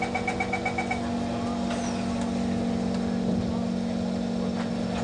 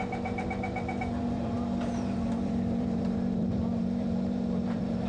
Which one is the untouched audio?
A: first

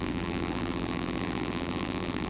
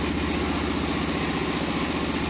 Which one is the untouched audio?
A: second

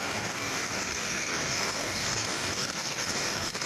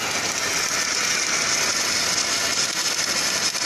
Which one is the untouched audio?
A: second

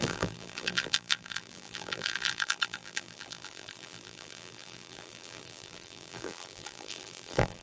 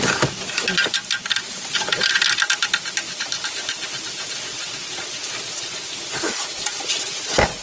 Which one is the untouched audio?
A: second